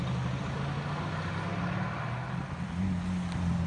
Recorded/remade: recorded